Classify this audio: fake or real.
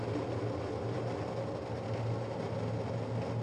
real